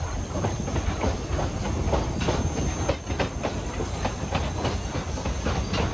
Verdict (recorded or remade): recorded